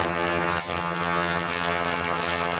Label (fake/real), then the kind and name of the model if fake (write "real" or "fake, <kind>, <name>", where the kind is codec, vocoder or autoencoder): fake, vocoder, HiFi-GAN